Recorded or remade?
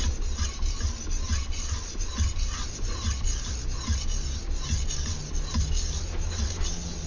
recorded